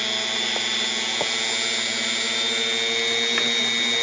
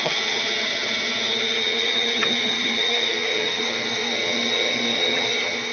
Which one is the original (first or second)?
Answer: first